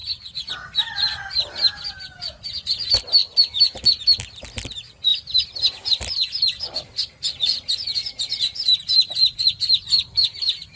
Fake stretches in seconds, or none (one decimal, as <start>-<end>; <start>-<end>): 0.0-0.5